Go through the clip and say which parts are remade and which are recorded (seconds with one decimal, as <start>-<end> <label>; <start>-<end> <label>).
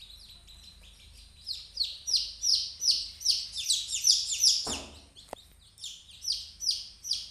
0.0-7.3 recorded